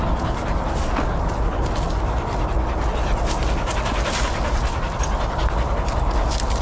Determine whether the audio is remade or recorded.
recorded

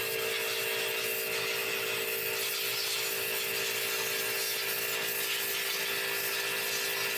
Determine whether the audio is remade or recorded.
recorded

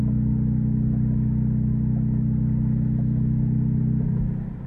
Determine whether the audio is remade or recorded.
recorded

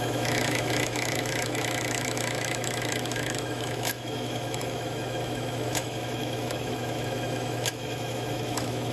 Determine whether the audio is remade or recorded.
remade